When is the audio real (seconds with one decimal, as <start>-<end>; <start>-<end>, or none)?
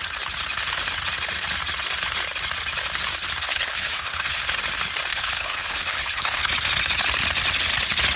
0.0-3.4; 4.4-5.1; 6.5-8.2